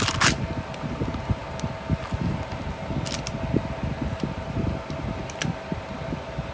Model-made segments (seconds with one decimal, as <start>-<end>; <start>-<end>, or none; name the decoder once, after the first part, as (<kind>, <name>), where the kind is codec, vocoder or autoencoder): none